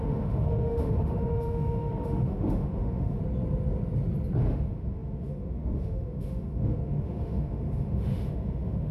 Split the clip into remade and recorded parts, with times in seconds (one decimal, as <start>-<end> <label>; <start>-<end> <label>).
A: 0.0-3.2 remade; 3.2-4.4 recorded; 4.4-8.9 remade